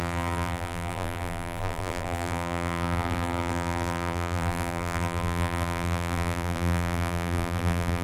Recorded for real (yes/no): no